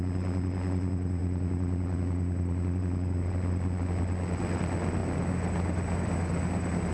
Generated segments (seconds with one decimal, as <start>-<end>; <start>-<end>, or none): none